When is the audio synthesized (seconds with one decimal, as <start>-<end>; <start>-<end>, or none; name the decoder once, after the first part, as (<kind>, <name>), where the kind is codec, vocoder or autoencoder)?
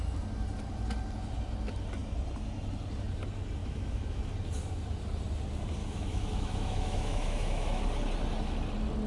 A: 3.6-4.2 (autoencoder, DAC-VAE); 5.8-7.8